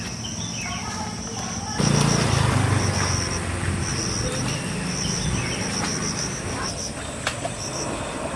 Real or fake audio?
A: real